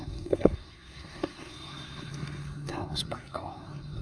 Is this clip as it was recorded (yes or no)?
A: no